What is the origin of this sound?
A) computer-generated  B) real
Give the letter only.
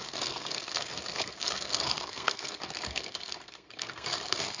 A